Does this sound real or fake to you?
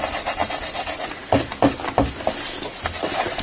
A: real